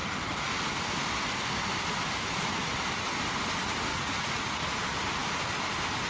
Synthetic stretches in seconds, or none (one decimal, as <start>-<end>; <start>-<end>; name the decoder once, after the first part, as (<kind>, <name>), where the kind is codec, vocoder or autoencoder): 3.9-4.6 (vocoder, Vocos)